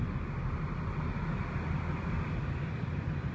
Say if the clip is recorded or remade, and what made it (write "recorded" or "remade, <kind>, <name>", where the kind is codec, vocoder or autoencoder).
recorded